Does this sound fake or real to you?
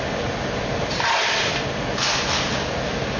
real